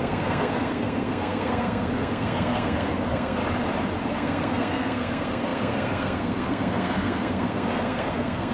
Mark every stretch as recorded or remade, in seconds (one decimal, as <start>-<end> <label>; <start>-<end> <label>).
0.0-3.4 remade; 3.4-4.1 recorded; 4.1-8.5 remade

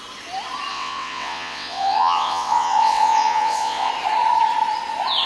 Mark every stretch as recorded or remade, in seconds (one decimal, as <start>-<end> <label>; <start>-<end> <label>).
0.0-0.7 recorded; 0.7-3.9 remade; 3.9-5.3 recorded

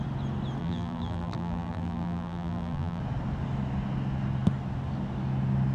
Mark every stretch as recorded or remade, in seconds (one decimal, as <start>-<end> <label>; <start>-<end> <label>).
0.0-0.6 recorded; 0.6-3.0 remade; 3.0-5.7 recorded

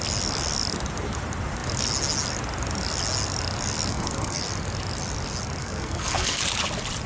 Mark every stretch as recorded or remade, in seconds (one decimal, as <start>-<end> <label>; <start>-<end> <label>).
0.0-3.9 recorded; 3.9-4.4 remade; 4.4-5.6 recorded; 5.6-6.4 remade; 6.4-7.1 recorded